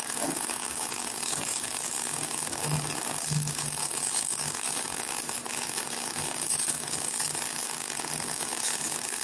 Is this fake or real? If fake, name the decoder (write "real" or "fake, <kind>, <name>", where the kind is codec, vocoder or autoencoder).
fake, codec, DAC